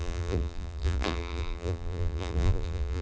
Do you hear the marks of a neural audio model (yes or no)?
yes